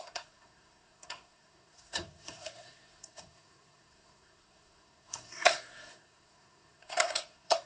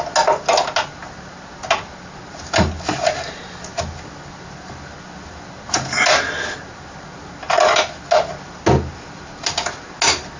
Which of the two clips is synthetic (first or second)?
first